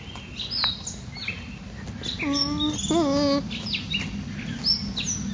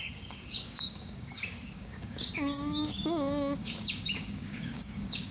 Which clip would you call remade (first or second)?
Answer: second